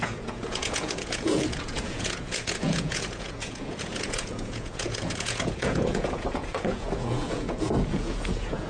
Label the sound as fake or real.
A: fake